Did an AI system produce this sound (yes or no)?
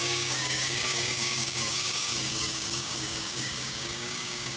yes